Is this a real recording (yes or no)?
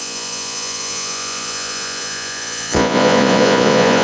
no